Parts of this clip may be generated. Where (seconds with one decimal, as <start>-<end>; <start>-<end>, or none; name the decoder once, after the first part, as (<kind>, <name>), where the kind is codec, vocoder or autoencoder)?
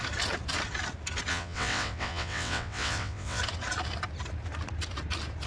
1.3-3.4 (vocoder, WaveNeXt)